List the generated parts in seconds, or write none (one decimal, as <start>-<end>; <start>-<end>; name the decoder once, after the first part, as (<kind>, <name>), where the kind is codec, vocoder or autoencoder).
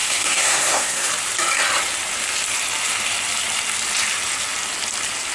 0.0-1.1 (codec, SNAC)